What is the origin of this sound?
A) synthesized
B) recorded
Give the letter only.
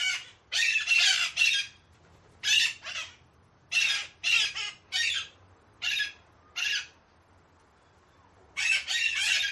B